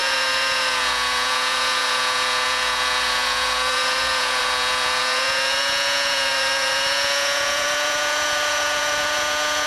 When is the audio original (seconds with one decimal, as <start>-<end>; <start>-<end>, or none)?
none